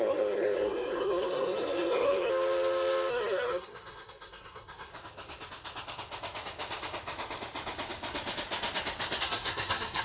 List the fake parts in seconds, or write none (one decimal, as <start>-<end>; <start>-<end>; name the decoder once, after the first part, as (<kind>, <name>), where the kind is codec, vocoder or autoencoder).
0.0-2.3 (codec, SNAC); 3.1-4.9; 9.2-10.0